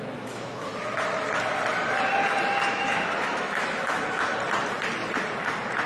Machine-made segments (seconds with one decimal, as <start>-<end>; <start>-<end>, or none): 0.0-0.7; 2.7-4.3